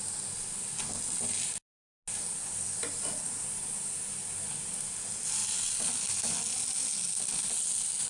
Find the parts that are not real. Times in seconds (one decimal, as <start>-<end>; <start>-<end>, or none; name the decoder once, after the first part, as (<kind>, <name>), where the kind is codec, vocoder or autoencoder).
none